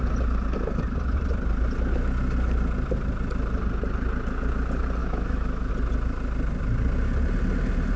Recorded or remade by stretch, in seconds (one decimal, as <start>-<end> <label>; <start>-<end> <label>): 0.0-5.0 recorded; 5.0-5.7 remade; 5.7-8.0 recorded